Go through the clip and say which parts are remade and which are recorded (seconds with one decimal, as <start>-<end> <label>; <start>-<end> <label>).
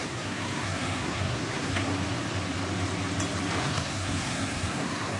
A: 0.0-1.9 remade; 1.9-3.6 recorded; 3.6-5.2 remade